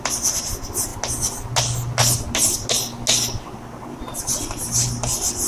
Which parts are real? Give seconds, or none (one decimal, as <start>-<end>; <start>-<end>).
0.0-5.5